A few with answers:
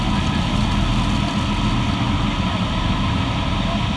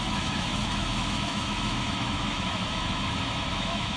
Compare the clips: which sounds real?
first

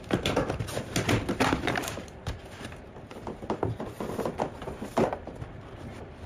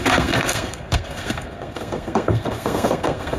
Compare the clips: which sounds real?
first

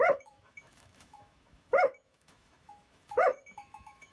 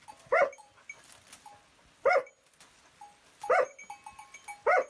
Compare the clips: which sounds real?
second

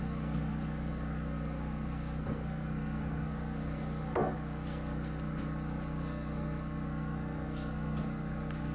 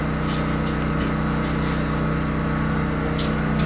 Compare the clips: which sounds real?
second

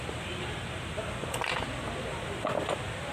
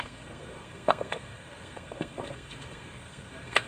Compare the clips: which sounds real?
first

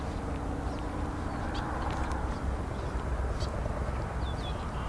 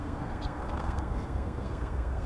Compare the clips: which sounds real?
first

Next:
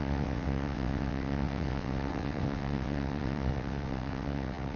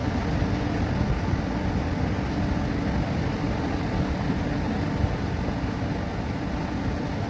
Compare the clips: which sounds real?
second